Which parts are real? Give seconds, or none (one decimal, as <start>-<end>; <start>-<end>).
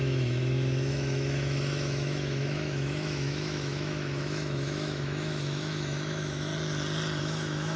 6.5-7.2